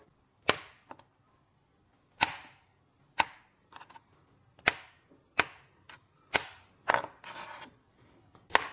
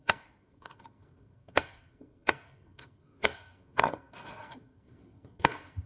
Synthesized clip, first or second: second